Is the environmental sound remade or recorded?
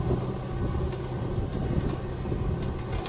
recorded